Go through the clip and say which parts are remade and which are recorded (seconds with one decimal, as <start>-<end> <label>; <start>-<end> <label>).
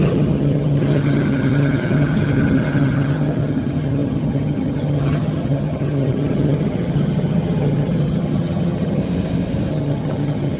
0.0-9.0 remade; 9.0-9.7 recorded; 9.7-10.6 remade